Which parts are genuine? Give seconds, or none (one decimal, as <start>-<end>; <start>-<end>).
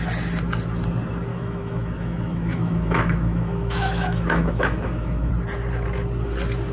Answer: 0.0-1.3; 5.3-6.7